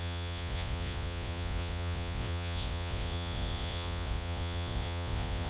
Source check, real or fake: fake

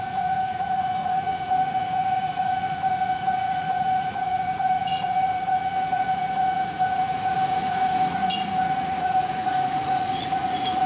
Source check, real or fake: fake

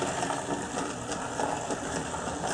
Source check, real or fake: real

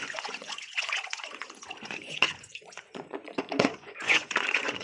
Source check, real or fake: fake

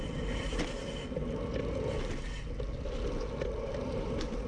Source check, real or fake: real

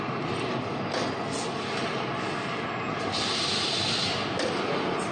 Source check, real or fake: real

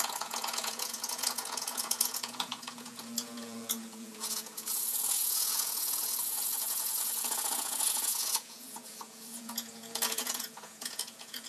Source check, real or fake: fake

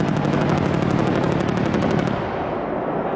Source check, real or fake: real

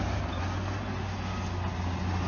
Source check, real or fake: real